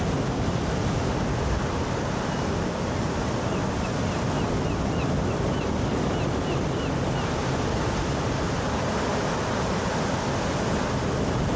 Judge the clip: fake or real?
real